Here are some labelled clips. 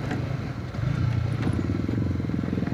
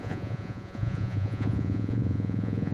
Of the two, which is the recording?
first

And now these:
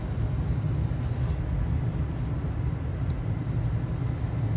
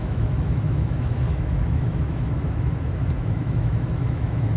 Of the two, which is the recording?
first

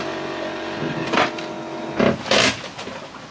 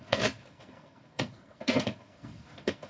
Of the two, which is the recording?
first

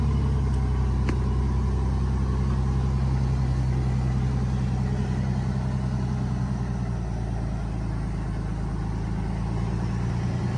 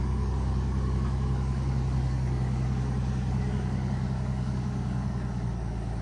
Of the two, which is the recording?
first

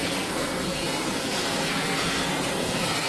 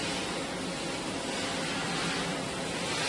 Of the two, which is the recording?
second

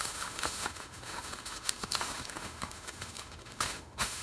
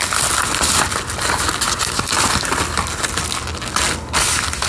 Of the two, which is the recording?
second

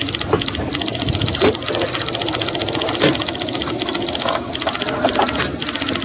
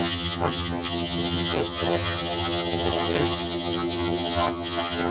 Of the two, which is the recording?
first